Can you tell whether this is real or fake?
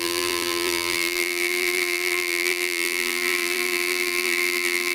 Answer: fake